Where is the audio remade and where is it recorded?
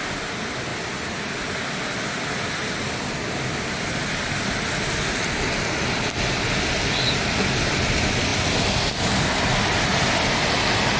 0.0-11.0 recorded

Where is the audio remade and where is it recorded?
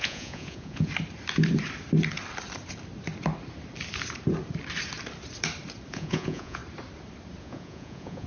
0.0-0.9 remade; 0.9-5.9 recorded; 5.9-6.6 remade; 6.6-7.4 recorded; 7.4-8.3 remade